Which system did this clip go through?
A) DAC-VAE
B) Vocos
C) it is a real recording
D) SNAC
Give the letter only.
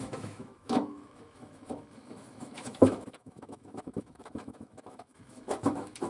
A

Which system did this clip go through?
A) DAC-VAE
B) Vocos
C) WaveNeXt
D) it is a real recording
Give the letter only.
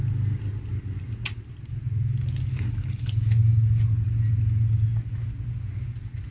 D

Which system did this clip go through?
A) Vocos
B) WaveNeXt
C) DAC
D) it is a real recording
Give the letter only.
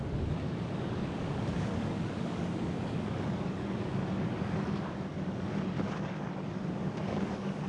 C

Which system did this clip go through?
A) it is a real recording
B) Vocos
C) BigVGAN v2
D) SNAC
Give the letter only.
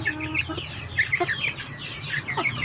A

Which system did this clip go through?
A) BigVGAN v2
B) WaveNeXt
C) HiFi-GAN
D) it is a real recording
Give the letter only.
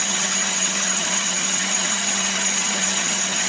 C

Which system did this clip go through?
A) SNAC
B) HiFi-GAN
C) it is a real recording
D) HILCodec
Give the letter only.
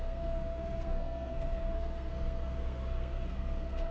A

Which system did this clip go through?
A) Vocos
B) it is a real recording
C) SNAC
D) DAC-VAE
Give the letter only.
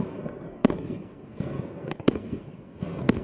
C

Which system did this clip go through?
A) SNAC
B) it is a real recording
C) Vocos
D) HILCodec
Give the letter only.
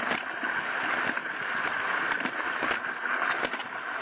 B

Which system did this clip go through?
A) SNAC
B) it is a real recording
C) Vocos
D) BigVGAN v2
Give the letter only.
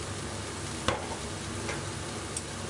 B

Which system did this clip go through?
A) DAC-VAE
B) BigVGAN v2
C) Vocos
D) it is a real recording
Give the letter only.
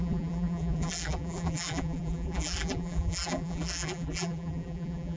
B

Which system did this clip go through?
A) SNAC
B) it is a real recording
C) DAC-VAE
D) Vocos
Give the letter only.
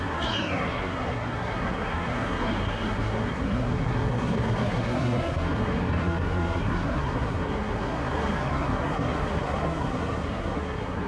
A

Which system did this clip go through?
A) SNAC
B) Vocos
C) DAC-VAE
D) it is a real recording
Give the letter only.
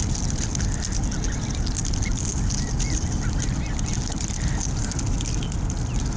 D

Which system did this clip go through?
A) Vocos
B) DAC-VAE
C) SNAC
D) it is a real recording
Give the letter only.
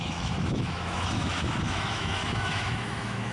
B